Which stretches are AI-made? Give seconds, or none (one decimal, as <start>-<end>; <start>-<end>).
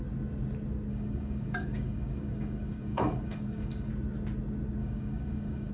0.9-3.9; 4.8-5.7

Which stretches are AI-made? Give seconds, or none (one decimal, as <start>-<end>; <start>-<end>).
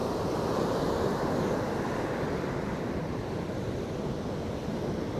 1.7-5.2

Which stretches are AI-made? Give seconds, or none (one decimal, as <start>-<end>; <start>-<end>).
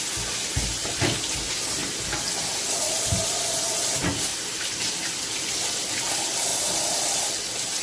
4.3-4.9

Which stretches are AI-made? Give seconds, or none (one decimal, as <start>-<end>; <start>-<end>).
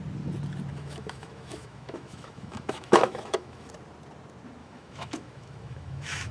0.7-3.7; 4.6-6.3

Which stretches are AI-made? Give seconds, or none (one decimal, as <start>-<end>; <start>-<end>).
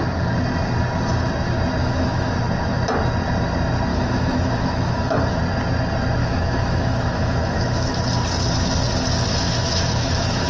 1.8-2.3; 3.9-5.4; 6.2-8.0; 9.3-10.5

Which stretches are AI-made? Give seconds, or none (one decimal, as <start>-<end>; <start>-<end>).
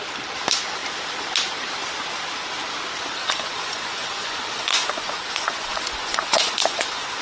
3.2-7.2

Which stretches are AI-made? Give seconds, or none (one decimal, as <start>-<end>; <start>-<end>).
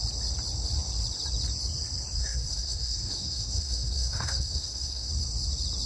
2.2-5.1